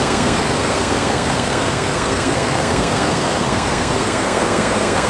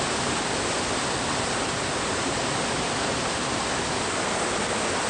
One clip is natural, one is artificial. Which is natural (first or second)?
second